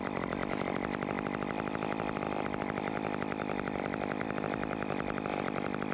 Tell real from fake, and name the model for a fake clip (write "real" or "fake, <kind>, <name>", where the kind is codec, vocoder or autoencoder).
real